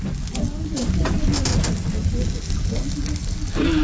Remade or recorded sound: recorded